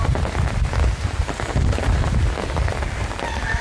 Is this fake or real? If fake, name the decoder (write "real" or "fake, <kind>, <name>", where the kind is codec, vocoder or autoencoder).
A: real